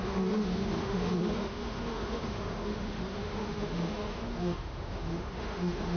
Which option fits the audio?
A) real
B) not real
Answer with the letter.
B